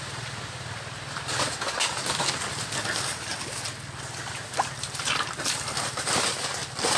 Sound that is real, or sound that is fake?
real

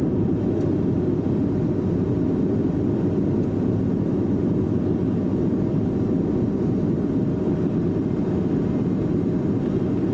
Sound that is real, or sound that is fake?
real